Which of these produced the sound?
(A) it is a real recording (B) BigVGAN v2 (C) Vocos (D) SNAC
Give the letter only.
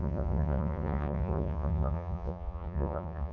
C